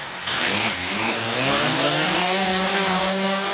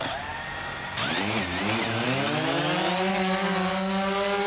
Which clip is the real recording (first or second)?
second